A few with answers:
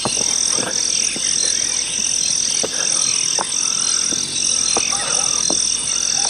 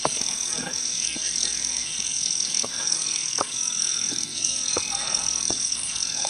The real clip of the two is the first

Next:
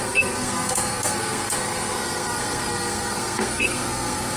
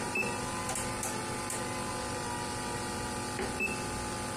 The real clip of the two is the second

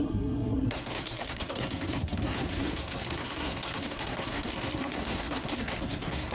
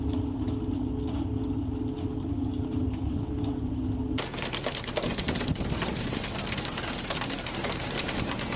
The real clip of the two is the second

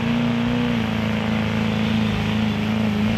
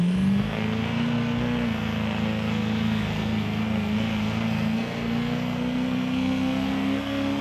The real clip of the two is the first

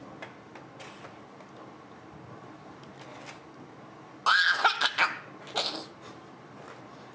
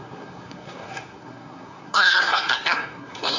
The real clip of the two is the first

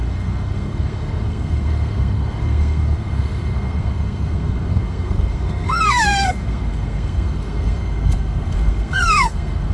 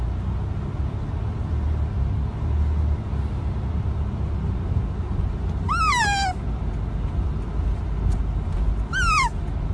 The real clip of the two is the second